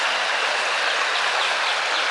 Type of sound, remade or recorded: recorded